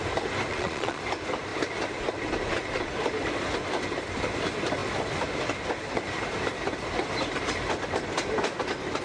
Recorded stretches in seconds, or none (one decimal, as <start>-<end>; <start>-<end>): 0.0-0.5; 1.0-9.0